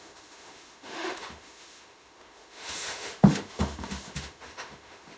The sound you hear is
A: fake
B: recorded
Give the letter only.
A